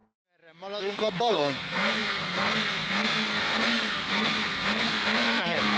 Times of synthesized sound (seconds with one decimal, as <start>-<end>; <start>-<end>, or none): 0.8-5.8

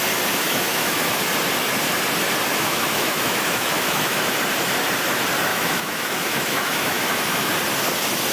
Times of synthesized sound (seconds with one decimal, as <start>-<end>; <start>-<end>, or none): 0.4-1.2; 2.5-4.2; 5.5-7.5

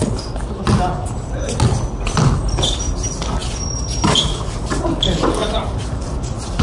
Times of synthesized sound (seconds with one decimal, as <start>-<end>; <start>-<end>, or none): 5.4-6.6

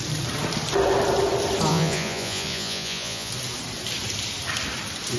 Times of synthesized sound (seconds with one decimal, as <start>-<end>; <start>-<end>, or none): 1.7-3.3

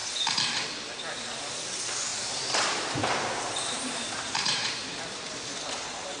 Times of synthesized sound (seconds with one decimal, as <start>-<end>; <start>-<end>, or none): 2.1-5.8

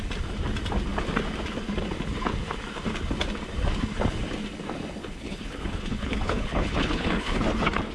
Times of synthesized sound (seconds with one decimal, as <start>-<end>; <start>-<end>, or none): 5.0-7.4

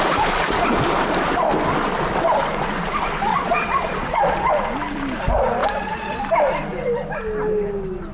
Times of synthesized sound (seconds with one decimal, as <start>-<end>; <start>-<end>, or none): 3.3-4.5; 5.6-6.2